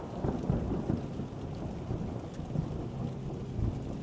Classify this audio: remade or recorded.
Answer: recorded